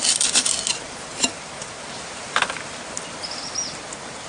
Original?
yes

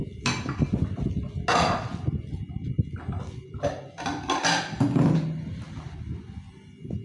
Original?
yes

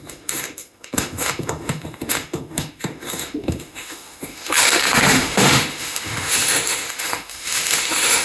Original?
no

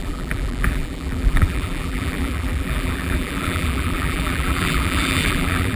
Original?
no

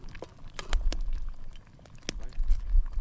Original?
yes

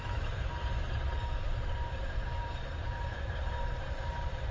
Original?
no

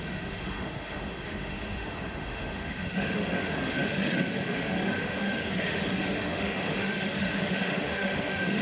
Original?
no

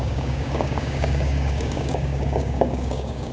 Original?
no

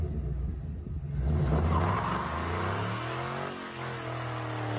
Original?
yes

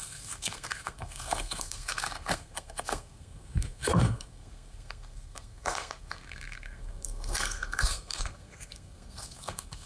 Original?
no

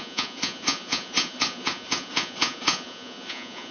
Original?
no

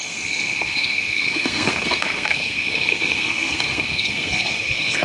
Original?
no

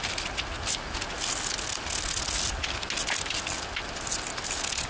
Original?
yes